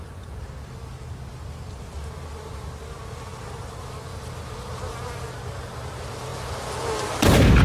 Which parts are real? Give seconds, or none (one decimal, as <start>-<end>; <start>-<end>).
0.0-7.6